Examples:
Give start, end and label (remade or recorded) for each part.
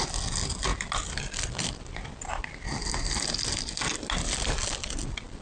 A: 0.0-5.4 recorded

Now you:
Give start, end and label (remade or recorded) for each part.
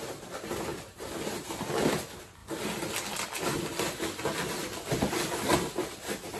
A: 0.0-6.4 recorded